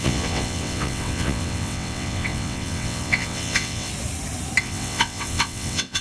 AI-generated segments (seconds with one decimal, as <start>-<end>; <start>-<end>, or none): 0.0-3.9; 4.6-6.0